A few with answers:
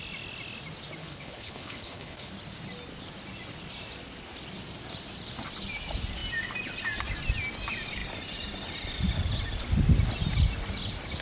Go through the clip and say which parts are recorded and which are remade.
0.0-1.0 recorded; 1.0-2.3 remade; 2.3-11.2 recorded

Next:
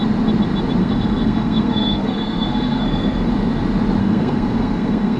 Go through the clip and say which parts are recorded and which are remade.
0.0-0.8 recorded; 0.8-3.3 remade; 3.3-4.0 recorded; 4.0-5.2 remade

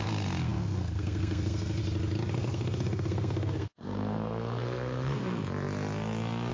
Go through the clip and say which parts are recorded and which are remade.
0.0-1.8 remade; 1.8-2.3 recorded; 2.3-5.2 remade; 5.2-6.5 recorded

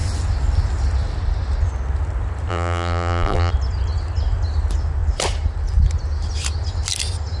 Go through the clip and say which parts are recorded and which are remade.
0.0-2.5 recorded; 2.5-3.5 remade; 3.5-7.4 recorded

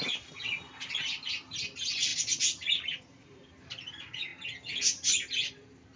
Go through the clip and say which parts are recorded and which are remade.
0.0-6.0 recorded

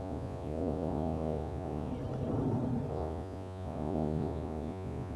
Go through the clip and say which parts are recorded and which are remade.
0.0-1.9 remade; 1.9-2.9 recorded; 2.9-5.2 remade

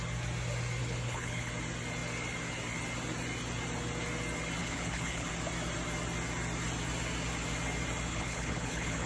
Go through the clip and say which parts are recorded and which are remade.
0.0-0.8 recorded; 0.8-1.5 remade; 1.5-4.6 recorded; 4.6-5.3 remade; 5.3-8.1 recorded; 8.1-9.1 remade

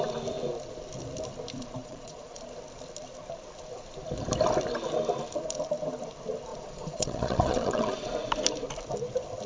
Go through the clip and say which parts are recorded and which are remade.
0.0-1.8 recorded; 1.8-2.4 remade; 2.4-6.5 recorded; 6.5-8.1 remade; 8.1-9.5 recorded